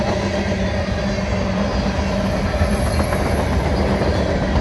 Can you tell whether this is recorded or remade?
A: recorded